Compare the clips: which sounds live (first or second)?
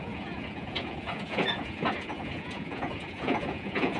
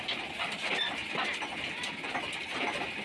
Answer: second